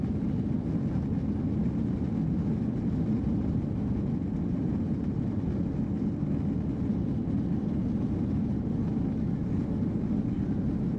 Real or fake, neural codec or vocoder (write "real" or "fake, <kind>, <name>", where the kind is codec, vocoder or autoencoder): real